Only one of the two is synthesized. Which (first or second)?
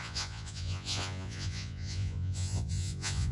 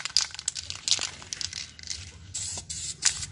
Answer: first